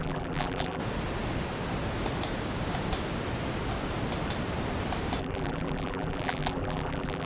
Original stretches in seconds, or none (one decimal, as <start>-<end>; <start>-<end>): 0.8-5.2